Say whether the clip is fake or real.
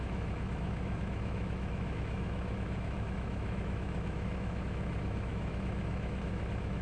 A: fake